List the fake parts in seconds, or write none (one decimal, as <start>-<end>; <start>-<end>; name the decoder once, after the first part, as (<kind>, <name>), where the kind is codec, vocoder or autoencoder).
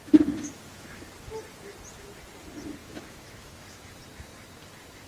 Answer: 0.0-1.0 (autoencoder, DAC-VAE); 2.8-4.0